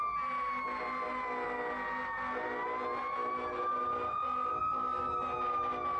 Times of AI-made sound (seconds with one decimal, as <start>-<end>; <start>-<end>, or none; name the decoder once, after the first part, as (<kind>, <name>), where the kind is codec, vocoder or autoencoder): none